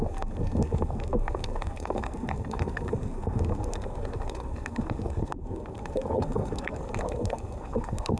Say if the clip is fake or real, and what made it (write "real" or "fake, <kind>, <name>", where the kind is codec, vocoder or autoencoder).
fake, codec, SNAC